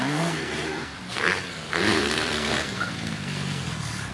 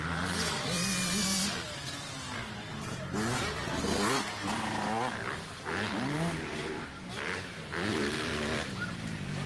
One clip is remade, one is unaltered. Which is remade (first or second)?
first